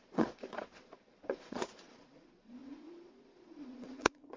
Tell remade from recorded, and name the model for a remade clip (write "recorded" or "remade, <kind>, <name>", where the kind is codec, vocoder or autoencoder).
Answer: remade, vocoder, Vocos